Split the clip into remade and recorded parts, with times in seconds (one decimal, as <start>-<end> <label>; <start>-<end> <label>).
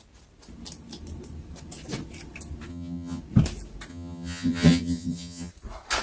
0.0-2.7 recorded; 2.7-3.2 remade; 3.2-3.9 recorded; 3.9-5.5 remade; 5.5-6.0 recorded